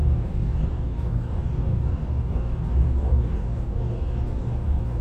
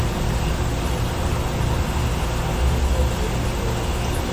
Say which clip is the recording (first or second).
second